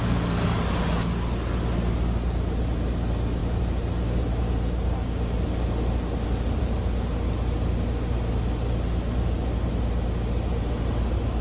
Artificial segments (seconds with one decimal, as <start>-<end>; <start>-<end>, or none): none